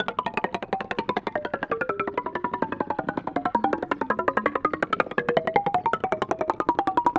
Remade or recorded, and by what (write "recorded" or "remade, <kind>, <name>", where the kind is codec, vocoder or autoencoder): recorded